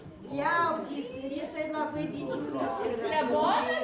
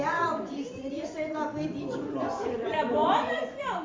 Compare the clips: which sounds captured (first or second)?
first